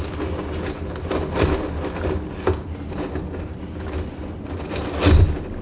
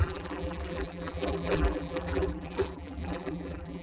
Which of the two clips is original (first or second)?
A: first